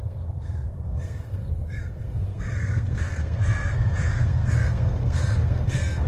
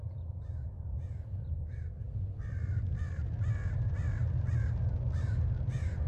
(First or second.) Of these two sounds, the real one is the second